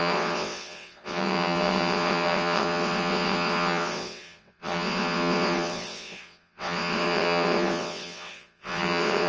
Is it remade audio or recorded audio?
remade